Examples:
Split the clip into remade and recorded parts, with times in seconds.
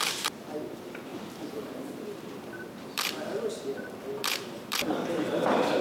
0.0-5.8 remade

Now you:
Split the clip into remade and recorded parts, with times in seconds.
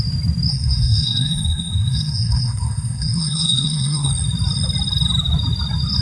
0.0-0.5 recorded; 0.5-4.1 remade; 4.1-6.0 recorded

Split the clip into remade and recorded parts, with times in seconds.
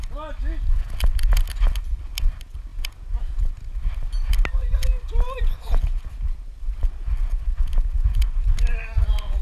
0.0-9.4 recorded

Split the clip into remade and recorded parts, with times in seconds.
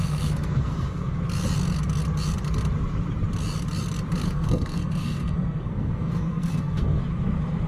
0.0-1.1 remade; 1.1-4.2 recorded; 4.2-7.0 remade; 7.0-7.7 recorded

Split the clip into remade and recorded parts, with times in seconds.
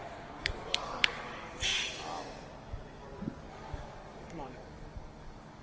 0.0-1.7 remade; 1.7-3.5 recorded; 3.5-5.6 remade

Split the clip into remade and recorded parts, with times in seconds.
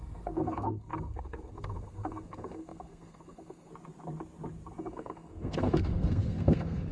0.0-3.7 remade; 3.7-4.8 recorded; 4.8-6.9 remade